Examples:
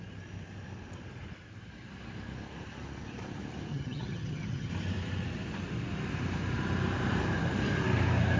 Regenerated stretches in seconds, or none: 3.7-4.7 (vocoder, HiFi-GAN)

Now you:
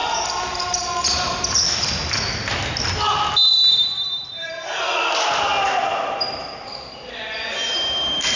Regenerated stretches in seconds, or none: none

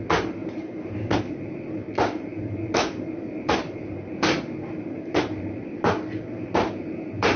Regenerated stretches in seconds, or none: none

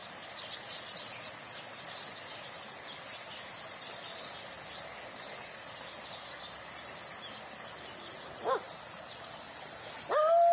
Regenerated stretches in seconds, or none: none

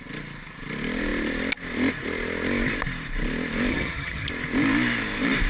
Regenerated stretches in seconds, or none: 3.7-4.3 (vocoder, HiFi-GAN)